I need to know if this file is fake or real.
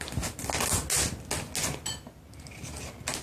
real